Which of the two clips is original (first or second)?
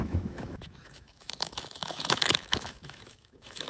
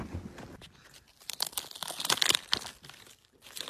second